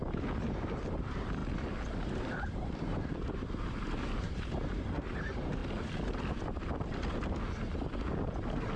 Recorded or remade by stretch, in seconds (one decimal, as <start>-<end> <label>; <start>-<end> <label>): 0.0-1.4 remade; 1.4-2.0 recorded; 2.0-5.6 remade; 5.6-8.8 recorded